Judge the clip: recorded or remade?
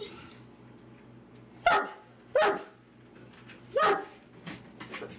recorded